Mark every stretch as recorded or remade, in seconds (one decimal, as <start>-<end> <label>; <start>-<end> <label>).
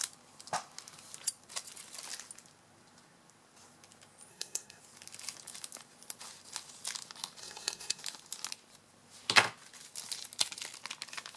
0.0-4.3 recorded; 4.3-4.8 remade; 4.8-7.4 recorded; 7.4-8.0 remade; 8.0-11.4 recorded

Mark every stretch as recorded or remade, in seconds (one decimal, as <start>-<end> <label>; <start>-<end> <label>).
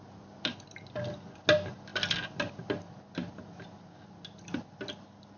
0.0-5.4 recorded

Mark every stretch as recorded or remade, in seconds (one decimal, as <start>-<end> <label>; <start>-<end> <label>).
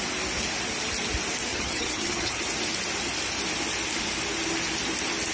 0.0-1.5 recorded; 1.5-2.4 remade; 2.4-5.3 recorded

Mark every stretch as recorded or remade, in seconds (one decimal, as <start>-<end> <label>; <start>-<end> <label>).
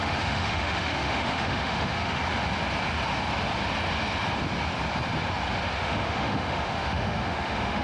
0.0-2.2 remade; 2.2-5.7 recorded; 5.7-7.8 remade